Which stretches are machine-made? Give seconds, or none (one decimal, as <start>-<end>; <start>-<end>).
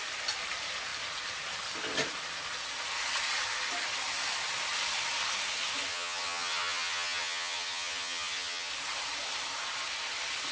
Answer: 5.9-8.7